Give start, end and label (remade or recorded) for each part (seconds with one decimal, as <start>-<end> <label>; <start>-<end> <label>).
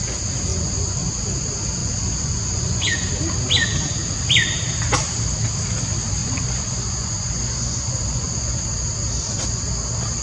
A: 0.0-0.5 recorded; 0.5-1.1 remade; 1.1-1.8 recorded; 1.8-3.1 remade; 3.1-6.2 recorded; 6.2-8.6 remade; 8.6-10.2 recorded